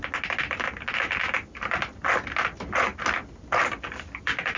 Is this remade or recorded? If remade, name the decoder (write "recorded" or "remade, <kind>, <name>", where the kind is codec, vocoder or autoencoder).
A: recorded